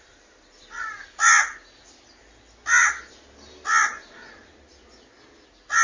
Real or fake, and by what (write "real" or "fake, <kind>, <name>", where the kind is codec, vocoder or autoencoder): real